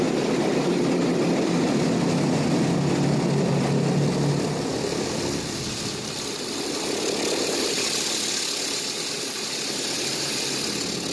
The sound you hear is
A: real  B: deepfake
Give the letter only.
A